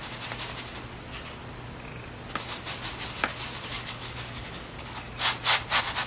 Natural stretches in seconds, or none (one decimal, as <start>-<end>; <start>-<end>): 0.0-3.3; 5.1-6.1